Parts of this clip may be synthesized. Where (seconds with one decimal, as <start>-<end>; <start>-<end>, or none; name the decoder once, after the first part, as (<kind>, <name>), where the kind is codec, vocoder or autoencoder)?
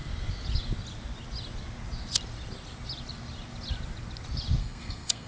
4.6-5.3 (codec, SNAC)